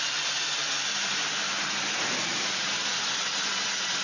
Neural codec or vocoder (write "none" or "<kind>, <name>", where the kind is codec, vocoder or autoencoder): vocoder, BigVGAN v2